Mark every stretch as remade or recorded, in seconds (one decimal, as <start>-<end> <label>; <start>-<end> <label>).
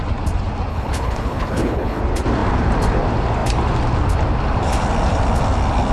0.0-0.7 recorded; 0.7-2.0 remade; 2.0-5.9 recorded